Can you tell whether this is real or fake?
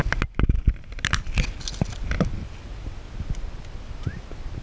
real